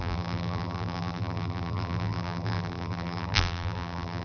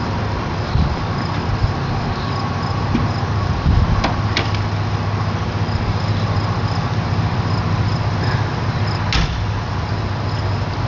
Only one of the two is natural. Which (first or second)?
second